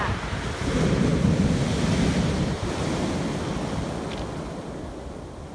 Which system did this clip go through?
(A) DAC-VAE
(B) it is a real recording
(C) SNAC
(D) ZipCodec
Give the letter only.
B